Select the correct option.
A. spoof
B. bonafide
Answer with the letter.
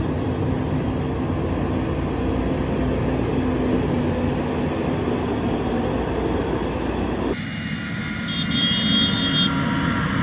B